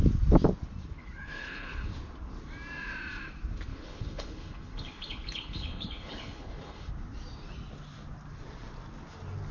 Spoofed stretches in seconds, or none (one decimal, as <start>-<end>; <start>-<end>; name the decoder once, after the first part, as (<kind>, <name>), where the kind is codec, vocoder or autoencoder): 1.0-1.9 (codec, HILCodec); 3.7-6.9